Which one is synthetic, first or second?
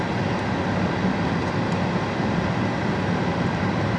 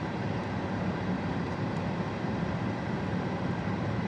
second